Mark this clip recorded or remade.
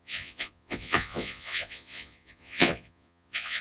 remade